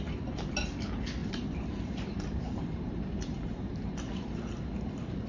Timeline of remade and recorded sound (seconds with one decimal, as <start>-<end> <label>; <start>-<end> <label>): 0.0-1.2 recorded; 1.2-4.4 remade; 4.4-5.3 recorded